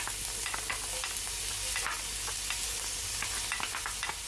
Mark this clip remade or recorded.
recorded